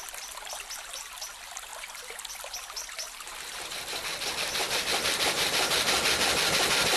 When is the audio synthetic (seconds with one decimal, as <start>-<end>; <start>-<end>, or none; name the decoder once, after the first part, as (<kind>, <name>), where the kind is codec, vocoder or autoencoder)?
none